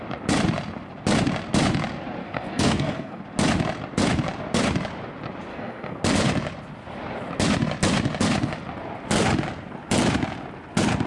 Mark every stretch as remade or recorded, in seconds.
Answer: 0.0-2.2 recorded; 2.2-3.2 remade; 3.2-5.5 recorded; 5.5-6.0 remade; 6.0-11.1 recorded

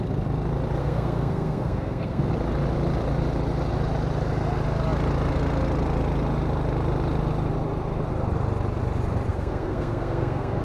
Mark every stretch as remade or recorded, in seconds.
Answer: 0.0-0.8 recorded; 0.8-2.3 remade; 2.3-9.3 recorded; 9.3-10.6 remade

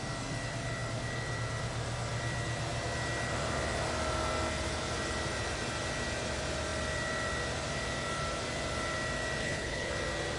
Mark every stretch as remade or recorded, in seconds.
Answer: 0.0-9.4 recorded; 9.4-9.9 remade; 9.9-10.4 recorded

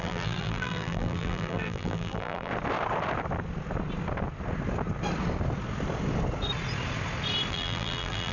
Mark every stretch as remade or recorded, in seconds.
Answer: 0.0-2.5 remade; 2.5-7.5 recorded; 7.5-8.3 remade

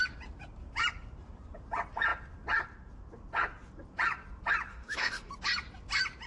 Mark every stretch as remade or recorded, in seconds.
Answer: 0.0-4.7 recorded; 4.7-5.3 remade; 5.3-6.3 recorded